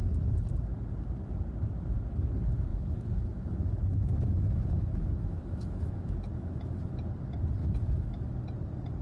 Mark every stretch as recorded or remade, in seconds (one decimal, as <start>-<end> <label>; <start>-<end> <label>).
0.0-2.7 recorded; 2.7-7.1 remade; 7.1-7.6 recorded; 7.6-8.3 remade; 8.3-9.0 recorded